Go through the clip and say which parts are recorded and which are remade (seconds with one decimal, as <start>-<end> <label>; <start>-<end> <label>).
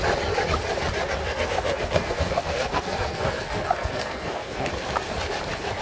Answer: 0.0-1.2 recorded; 1.2-4.7 remade; 4.7-5.8 recorded